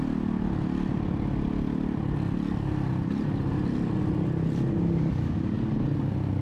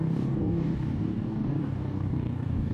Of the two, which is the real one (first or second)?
first